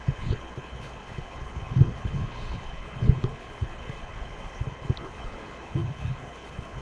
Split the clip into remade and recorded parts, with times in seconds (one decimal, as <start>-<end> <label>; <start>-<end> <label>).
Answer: 0.0-6.8 remade